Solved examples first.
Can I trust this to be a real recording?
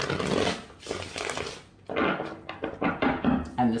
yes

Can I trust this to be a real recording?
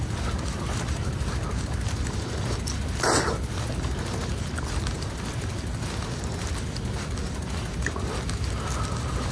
yes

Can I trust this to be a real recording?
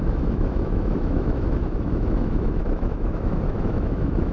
no